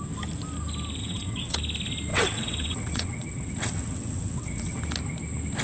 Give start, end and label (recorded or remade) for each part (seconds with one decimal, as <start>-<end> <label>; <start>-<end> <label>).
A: 0.0-1.0 recorded; 1.0-1.6 remade; 1.6-2.1 recorded; 2.1-4.8 remade; 4.8-5.6 recorded